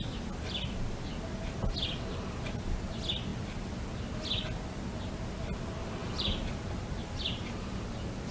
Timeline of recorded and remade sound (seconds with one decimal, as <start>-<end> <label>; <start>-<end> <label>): 0.0-6.0 recorded; 6.0-6.5 remade; 6.5-8.3 recorded